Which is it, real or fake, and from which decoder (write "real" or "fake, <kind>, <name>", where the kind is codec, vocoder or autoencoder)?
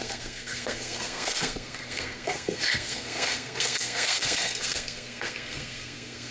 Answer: fake, codec, SNAC